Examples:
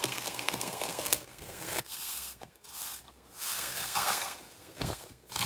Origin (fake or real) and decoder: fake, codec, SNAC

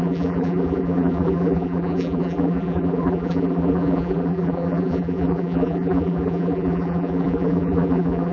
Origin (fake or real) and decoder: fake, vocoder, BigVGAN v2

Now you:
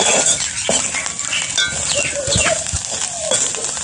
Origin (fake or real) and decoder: real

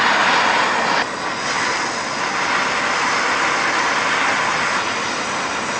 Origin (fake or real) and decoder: real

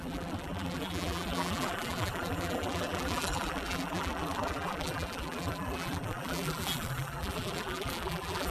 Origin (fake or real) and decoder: fake, vocoder, BigVGAN v2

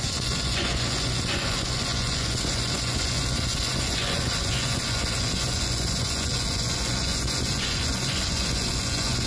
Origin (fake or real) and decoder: fake, vocoder, Vocos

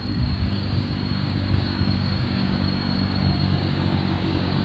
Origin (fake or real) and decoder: fake, codec, DAC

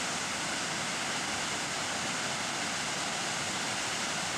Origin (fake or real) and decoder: fake, vocoder, BigVGAN v2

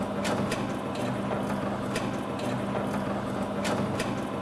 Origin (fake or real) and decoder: real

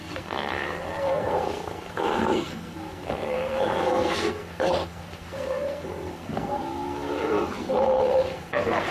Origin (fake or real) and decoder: fake, codec, SNAC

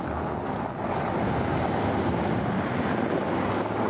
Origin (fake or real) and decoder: real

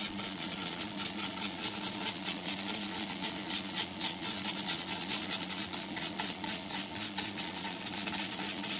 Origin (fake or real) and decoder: fake, vocoder, Vocos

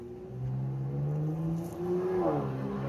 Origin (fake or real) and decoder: real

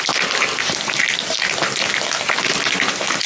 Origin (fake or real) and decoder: real